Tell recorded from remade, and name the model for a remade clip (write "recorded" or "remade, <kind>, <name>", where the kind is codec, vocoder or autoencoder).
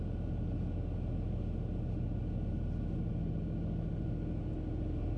recorded